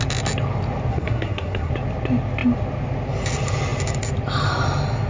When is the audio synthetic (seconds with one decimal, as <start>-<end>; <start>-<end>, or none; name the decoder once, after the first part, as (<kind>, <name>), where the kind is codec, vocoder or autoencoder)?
0.9-1.7 (codec, SNAC)